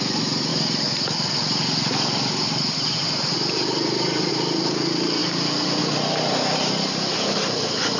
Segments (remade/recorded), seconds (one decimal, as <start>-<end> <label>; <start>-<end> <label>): 0.0-8.0 recorded